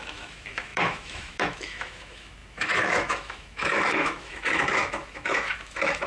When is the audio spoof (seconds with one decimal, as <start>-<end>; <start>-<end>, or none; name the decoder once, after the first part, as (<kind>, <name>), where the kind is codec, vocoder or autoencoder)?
0.0-6.1 (autoencoder, DAC-VAE)